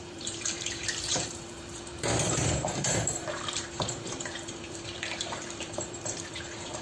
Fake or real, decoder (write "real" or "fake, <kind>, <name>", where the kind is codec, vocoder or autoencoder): fake, vocoder, BigVGAN v2